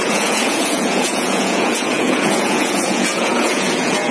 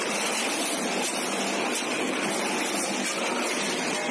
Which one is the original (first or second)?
second